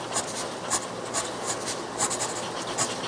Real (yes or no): yes